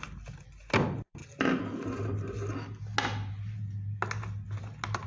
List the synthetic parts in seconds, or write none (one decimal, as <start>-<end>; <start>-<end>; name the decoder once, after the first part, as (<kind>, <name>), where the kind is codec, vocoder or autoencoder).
none